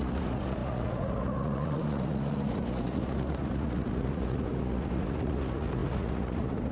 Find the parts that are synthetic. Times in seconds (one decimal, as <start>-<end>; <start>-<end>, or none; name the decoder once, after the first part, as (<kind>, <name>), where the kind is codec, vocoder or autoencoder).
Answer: 0.0-6.7 (vocoder, Vocos)